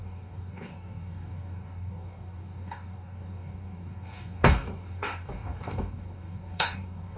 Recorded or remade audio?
remade